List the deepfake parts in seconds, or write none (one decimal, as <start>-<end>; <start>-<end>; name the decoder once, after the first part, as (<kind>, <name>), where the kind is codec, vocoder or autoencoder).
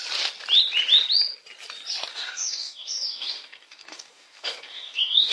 2.1-5.3 (codec, DAC)